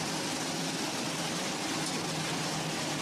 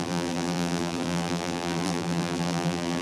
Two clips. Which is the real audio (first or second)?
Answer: first